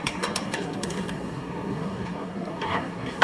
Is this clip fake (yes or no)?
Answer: yes